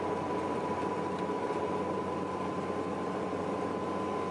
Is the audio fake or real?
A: real